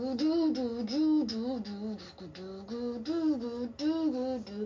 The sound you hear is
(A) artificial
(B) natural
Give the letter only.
B